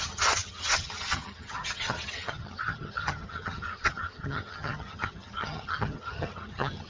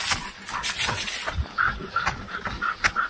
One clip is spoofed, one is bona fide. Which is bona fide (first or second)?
second